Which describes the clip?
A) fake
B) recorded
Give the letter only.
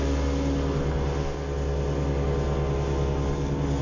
B